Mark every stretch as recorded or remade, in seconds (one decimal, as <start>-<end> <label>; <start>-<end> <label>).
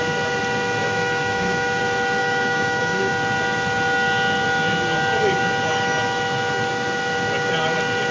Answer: 0.0-0.8 recorded; 0.8-1.8 remade; 1.8-2.2 recorded; 2.2-3.1 remade; 3.1-8.1 recorded